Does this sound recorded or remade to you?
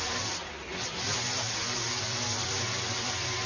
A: remade